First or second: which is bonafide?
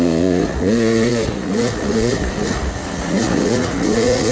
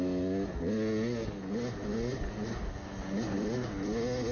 second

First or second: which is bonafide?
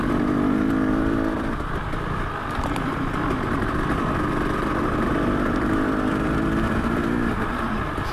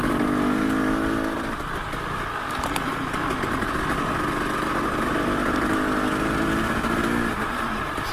second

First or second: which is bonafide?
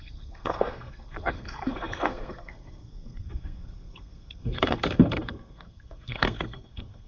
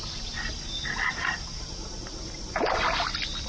second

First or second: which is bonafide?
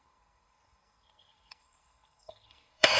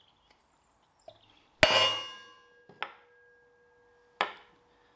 second